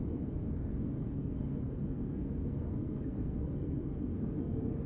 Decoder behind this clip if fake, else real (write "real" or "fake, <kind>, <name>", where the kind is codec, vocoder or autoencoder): fake, codec, SNAC